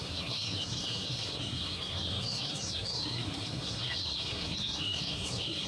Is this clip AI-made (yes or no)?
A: yes